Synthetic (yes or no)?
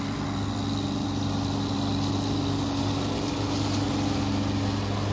no